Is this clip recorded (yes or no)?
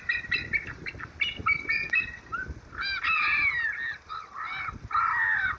yes